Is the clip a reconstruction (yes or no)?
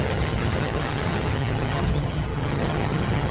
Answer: yes